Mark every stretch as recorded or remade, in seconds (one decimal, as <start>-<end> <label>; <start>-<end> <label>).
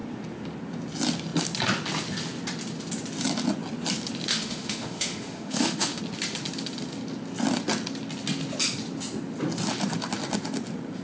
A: 0.0-4.3 recorded; 4.3-6.0 remade; 6.0-11.0 recorded